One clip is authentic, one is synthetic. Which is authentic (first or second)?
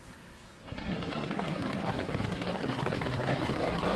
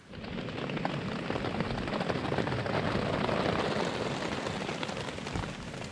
second